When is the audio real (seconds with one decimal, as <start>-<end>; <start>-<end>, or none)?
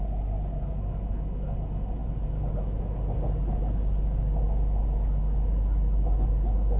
0.0-6.8